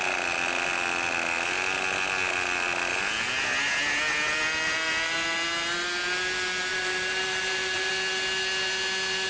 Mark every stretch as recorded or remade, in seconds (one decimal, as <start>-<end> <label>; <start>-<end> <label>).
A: 0.0-6.7 recorded; 6.7-7.9 remade; 7.9-9.3 recorded